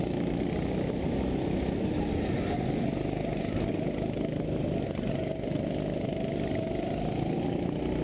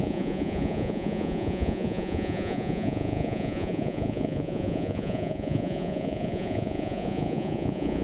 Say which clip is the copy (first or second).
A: second